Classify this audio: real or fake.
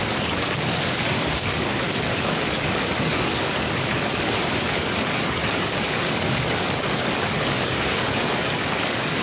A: fake